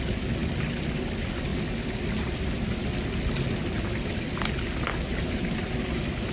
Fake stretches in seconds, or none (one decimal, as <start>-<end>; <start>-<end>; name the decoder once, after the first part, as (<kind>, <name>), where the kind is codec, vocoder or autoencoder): none